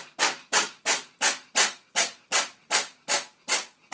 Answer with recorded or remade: recorded